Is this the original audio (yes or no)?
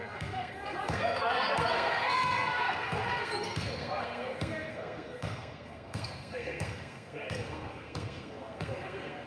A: no